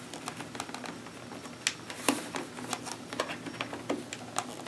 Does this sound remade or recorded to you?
recorded